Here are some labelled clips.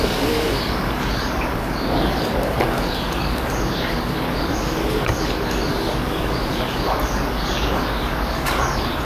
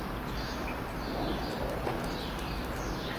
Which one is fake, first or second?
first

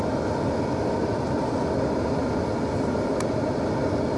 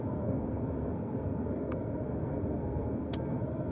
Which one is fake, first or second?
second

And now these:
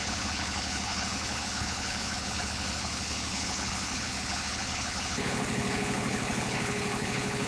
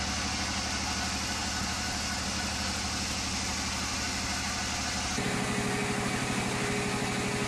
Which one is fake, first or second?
first